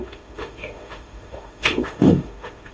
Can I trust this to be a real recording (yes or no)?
no